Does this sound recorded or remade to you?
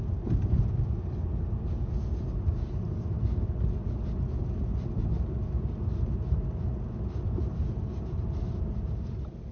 recorded